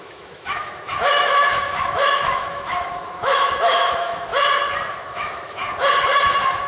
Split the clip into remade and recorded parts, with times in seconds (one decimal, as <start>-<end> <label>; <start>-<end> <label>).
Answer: 0.0-4.3 remade; 4.3-4.9 recorded; 4.9-5.6 remade; 5.6-6.1 recorded; 6.1-6.7 remade